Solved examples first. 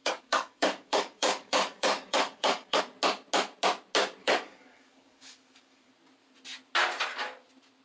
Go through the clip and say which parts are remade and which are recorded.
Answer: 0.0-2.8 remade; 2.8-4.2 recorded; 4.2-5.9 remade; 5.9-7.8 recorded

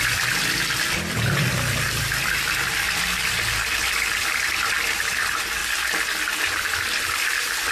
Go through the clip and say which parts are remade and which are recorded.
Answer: 0.0-5.6 remade; 5.6-6.4 recorded; 6.4-7.7 remade